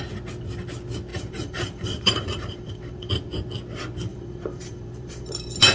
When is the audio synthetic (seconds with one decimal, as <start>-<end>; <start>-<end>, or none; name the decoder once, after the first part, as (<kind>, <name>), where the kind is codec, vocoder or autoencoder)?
1.1-3.1 (vocoder, BigVGAN v2); 4.1-5.3